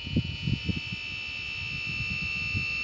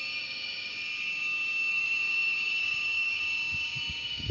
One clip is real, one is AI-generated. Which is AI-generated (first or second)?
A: second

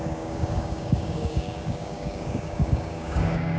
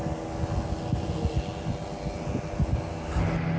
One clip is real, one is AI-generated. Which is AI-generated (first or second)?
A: first